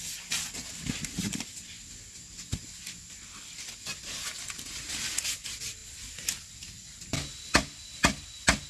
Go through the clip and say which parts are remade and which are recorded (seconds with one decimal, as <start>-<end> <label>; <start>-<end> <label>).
0.0-8.7 recorded